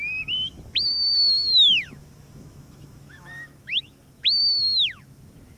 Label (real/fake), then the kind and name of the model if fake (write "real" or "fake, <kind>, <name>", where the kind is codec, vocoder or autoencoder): fake, autoencoder, DAC-VAE